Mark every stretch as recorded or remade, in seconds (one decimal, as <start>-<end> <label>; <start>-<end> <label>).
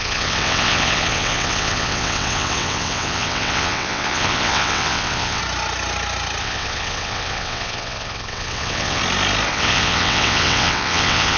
0.0-5.4 remade; 5.4-6.4 recorded; 6.4-9.0 remade; 9.0-9.5 recorded; 9.5-11.4 remade